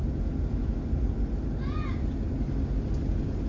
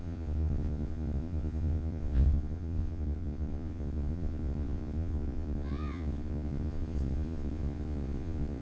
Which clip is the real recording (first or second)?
first